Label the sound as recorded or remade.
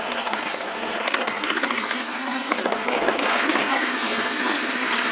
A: remade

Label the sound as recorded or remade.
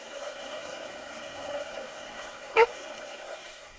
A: remade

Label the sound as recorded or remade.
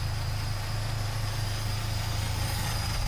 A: recorded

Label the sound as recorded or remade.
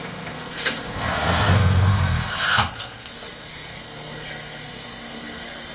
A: remade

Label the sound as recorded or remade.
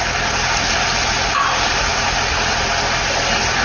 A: recorded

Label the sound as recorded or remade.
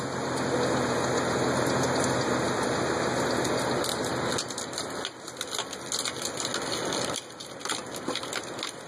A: recorded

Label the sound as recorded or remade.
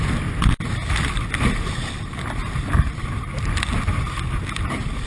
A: recorded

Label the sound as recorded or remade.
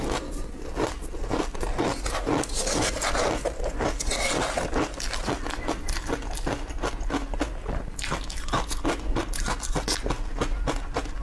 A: recorded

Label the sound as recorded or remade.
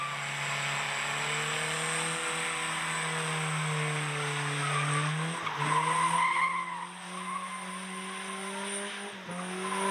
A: recorded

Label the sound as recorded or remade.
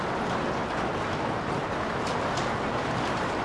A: recorded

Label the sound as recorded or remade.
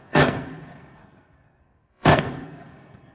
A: remade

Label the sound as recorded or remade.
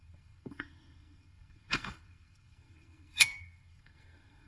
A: remade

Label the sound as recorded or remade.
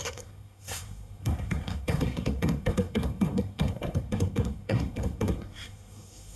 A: remade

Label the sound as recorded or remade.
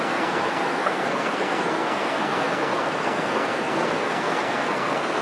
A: remade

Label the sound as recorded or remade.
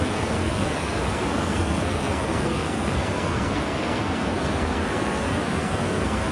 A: remade